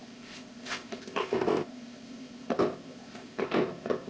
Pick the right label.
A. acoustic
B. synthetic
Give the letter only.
B